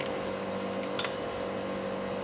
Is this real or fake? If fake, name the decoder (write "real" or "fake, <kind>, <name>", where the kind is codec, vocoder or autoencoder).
real